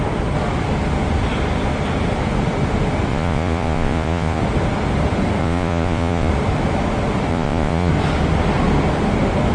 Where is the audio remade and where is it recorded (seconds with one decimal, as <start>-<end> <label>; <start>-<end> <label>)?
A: 0.0-3.1 recorded; 3.1-4.4 remade; 4.4-5.4 recorded; 5.4-6.3 remade; 6.3-7.3 recorded; 7.3-7.9 remade; 7.9-9.5 recorded

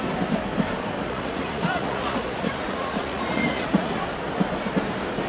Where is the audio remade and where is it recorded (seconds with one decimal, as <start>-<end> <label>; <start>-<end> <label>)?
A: 0.0-1.0 recorded; 1.0-4.0 remade; 4.0-5.3 recorded

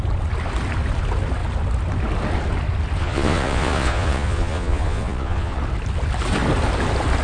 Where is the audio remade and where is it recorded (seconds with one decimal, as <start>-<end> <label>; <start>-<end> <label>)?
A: 0.0-3.0 recorded; 3.0-5.6 remade; 5.6-7.2 recorded